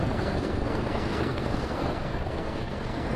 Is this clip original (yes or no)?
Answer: no